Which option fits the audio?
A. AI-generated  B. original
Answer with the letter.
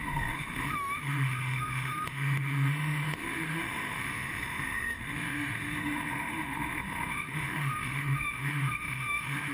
A